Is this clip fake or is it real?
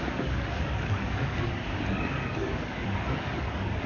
fake